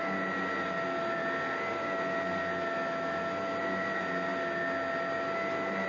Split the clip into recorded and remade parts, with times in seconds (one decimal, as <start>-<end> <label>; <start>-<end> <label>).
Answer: 0.0-5.9 recorded